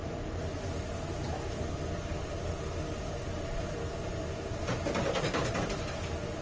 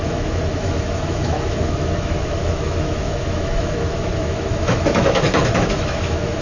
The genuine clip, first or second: first